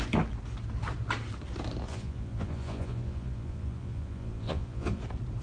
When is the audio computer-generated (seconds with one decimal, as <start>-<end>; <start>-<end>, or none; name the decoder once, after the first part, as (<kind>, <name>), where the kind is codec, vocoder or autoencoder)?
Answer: 1.9-5.0 (vocoder, Vocos)